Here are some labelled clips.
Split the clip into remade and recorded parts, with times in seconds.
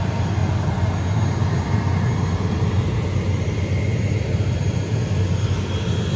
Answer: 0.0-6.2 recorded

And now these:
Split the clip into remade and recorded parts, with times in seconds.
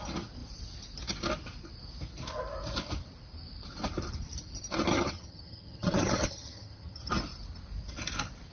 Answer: 0.0-4.9 recorded; 4.9-7.1 remade; 7.1-8.5 recorded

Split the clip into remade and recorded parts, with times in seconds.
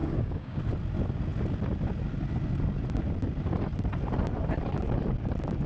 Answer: 0.0-0.6 remade; 0.6-5.7 recorded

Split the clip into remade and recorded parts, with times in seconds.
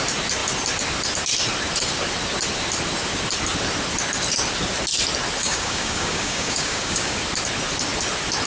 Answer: 0.0-5.4 recorded; 5.4-7.2 remade; 7.2-8.5 recorded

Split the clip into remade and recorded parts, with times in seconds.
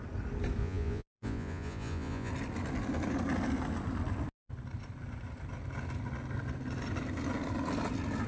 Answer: 0.0-0.6 recorded; 0.6-2.3 remade; 2.3-8.3 recorded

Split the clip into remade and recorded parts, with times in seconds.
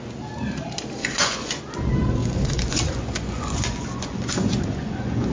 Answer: 0.0-1.0 recorded; 1.0-1.6 remade; 1.6-2.2 recorded; 2.2-5.3 remade